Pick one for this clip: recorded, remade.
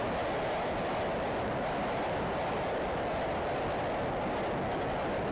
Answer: recorded